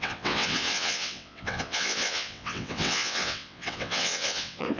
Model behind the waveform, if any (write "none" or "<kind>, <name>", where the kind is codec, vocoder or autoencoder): vocoder, WaveNeXt